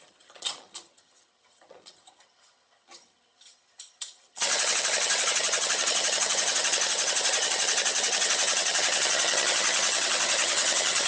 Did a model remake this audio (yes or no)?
yes